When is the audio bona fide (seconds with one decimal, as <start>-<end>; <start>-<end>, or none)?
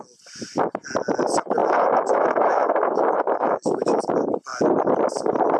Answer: 0.0-1.6; 4.0-5.6